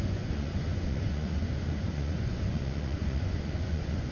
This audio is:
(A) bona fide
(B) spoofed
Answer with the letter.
B